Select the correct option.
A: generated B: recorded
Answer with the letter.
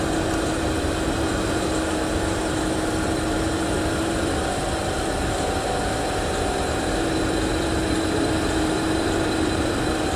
A